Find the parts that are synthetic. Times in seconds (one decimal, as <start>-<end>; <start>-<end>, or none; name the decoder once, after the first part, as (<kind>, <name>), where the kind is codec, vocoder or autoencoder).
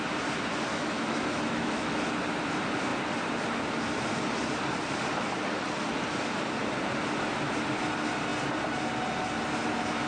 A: 0.7-1.9 (autoencoder, DAC-VAE)